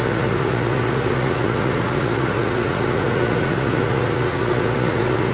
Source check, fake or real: fake